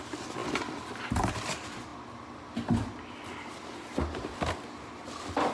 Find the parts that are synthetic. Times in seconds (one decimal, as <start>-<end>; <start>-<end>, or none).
none